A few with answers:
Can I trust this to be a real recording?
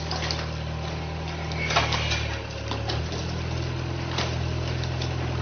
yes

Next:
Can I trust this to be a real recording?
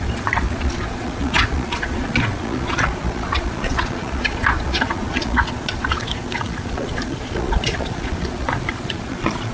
no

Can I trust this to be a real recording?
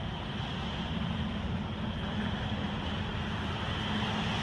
yes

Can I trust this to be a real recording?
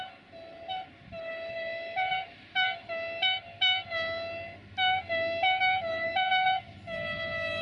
yes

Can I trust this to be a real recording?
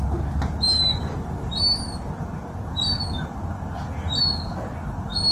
yes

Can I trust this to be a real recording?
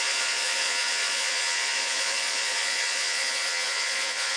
no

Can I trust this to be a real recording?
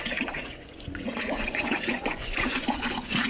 no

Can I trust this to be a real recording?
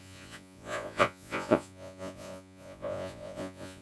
no